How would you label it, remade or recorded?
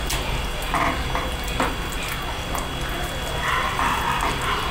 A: recorded